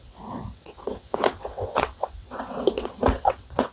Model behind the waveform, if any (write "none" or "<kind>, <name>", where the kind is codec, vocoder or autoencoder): vocoder, WaveNeXt